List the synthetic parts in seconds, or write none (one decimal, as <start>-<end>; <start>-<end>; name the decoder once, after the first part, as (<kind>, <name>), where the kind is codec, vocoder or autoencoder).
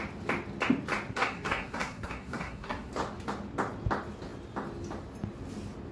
1.1-2.9 (codec, SNAC)